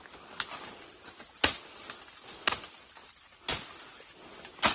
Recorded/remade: recorded